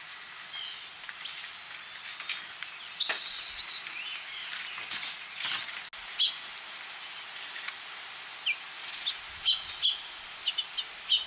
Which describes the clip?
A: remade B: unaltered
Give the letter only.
B